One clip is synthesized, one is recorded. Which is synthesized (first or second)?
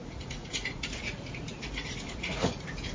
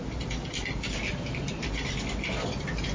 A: first